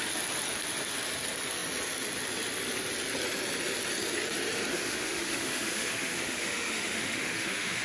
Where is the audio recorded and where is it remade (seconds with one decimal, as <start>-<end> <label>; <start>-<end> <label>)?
0.0-4.7 recorded; 4.7-7.8 remade